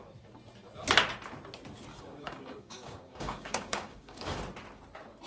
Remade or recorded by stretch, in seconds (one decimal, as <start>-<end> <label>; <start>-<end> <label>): 0.0-1.9 recorded; 1.9-4.4 remade; 4.4-5.3 recorded